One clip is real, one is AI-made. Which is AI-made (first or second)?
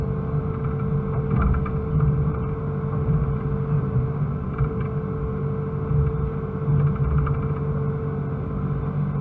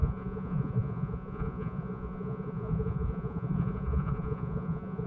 second